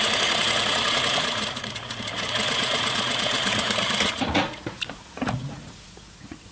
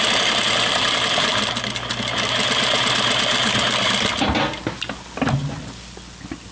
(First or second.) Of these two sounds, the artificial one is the first